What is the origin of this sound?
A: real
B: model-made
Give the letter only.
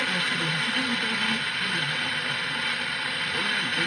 A